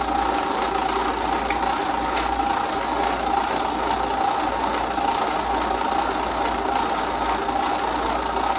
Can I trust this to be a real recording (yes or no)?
yes